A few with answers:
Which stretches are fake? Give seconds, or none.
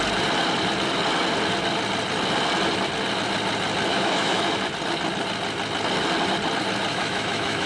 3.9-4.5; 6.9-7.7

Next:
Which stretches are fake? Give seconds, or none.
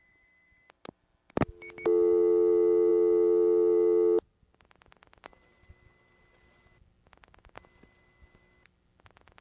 none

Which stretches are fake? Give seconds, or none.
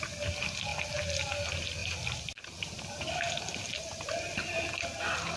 none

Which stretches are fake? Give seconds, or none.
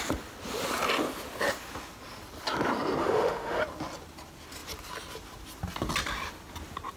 3.0-3.6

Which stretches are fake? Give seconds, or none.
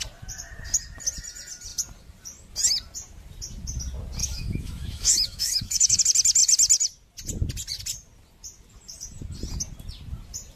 4.2-6.0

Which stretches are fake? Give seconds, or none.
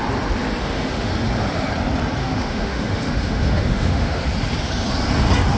0.6-1.1; 2.2-4.2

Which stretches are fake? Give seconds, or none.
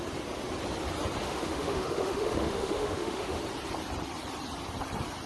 1.2-3.4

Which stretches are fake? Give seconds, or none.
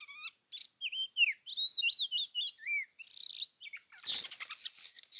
none